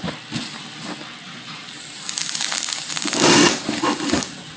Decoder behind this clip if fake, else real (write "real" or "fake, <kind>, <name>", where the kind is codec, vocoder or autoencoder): real